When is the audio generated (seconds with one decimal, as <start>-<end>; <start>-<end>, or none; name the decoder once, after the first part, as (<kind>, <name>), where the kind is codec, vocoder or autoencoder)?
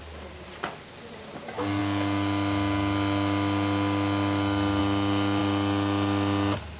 none